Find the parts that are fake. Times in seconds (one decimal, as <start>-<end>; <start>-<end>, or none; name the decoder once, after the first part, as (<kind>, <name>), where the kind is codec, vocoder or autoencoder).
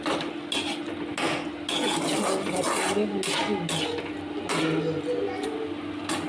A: none